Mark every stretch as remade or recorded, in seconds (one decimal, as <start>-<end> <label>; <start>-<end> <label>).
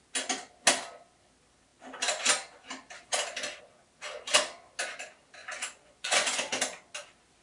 0.0-5.4 recorded; 5.4-6.5 remade; 6.5-7.4 recorded